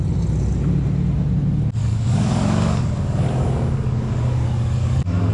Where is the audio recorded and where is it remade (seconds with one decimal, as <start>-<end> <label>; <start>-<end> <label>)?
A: 0.0-1.8 recorded; 1.8-5.3 remade